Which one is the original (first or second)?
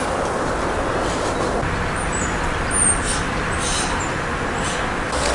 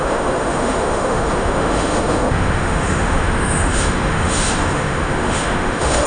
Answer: first